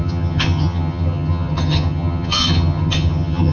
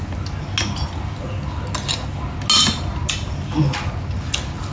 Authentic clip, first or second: second